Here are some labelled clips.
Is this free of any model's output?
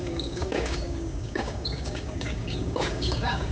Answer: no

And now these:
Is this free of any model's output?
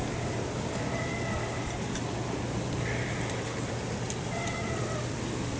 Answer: yes